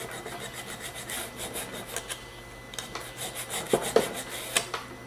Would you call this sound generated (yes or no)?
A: no